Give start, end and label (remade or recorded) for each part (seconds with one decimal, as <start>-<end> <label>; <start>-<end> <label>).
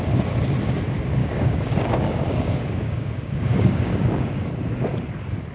0.0-1.2 recorded; 1.2-4.5 remade; 4.5-5.5 recorded